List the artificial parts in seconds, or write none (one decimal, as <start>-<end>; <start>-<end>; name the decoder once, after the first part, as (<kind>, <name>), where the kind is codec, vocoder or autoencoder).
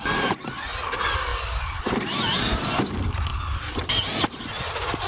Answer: 1.3-1.8 (vocoder, BigVGAN v2)